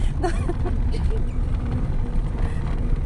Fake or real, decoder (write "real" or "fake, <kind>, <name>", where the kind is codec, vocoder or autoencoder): real